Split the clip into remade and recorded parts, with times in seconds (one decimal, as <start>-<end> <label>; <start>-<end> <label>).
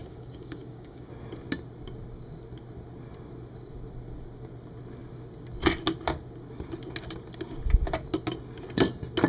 0.0-1.1 remade; 1.1-9.3 recorded